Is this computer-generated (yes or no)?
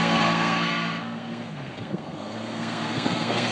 yes